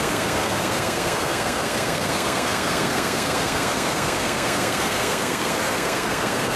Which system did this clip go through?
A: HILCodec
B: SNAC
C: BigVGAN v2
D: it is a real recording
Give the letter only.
B